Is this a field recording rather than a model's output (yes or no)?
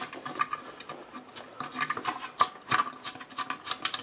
yes